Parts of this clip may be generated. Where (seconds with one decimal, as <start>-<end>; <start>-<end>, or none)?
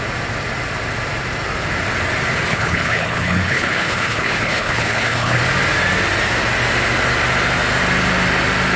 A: 2.5-5.4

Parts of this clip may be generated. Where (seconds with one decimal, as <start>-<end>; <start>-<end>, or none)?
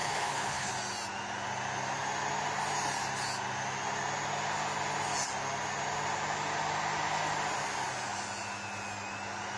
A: 0.0-0.7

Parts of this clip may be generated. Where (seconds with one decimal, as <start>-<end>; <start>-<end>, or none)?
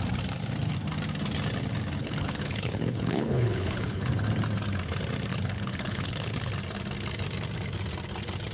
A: 2.0-4.1; 5.3-6.5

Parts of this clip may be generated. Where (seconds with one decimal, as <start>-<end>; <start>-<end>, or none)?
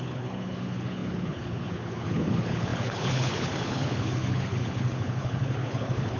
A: 0.0-6.2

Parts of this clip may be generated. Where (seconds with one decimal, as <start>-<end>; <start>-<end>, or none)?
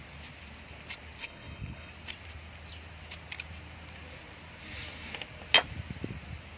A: 1.2-1.9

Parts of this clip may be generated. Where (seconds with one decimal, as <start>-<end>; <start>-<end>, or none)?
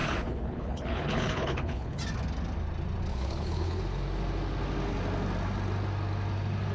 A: 0.0-2.0; 3.1-3.8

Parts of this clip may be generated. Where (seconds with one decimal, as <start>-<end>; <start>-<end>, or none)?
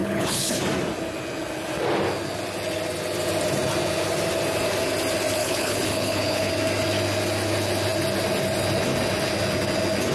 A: 0.0-0.6; 5.4-6.5